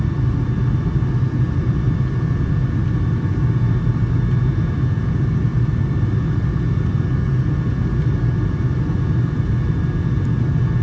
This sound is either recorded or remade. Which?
recorded